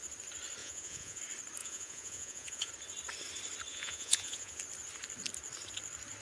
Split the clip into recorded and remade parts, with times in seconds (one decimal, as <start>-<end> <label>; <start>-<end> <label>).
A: 0.0-0.6 recorded; 0.6-1.2 remade; 1.2-1.6 recorded; 1.6-2.7 remade; 2.7-3.7 recorded; 3.7-4.6 remade; 4.6-6.2 recorded